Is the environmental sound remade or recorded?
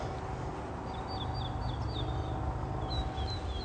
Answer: recorded